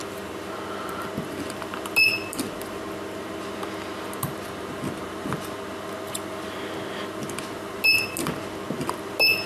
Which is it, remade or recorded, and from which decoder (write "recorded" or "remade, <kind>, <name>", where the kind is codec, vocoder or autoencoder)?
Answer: recorded